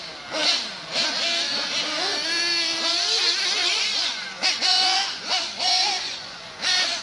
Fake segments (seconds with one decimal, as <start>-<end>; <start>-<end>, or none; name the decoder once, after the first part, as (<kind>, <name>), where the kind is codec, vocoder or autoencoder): 3.6-7.0 (vocoder, Vocos)